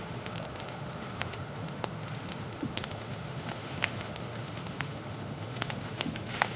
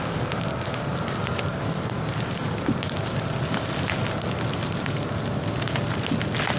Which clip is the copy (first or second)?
first